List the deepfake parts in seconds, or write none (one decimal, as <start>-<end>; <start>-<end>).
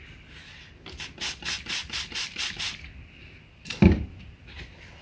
none